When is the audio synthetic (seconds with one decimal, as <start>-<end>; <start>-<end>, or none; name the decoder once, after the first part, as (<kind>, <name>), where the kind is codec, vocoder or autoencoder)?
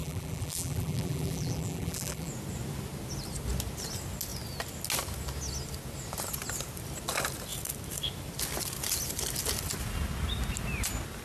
0.0-2.3 (vocoder, BigVGAN v2)